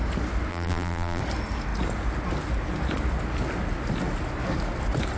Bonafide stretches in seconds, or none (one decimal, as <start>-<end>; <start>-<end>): 0.0-0.5; 1.2-5.2